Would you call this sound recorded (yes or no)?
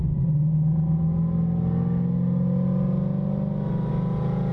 yes